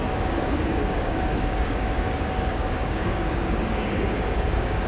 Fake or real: fake